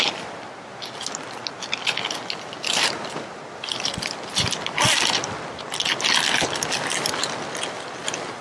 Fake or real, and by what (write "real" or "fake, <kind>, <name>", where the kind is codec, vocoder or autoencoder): real